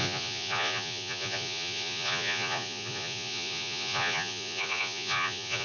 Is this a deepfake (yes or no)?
yes